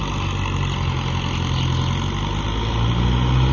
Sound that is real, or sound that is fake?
real